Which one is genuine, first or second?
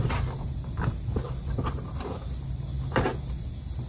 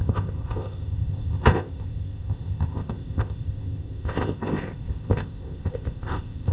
first